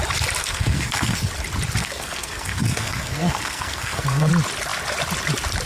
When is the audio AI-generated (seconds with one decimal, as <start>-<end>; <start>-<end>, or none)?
0.4-1.3; 1.8-4.3